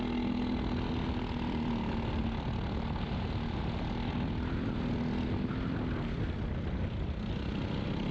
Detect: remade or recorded recorded